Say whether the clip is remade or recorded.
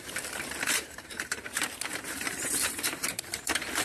remade